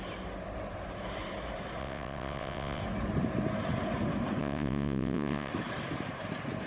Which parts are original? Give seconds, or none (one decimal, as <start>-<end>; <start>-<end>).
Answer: 0.0-1.8; 2.8-4.4; 5.5-6.7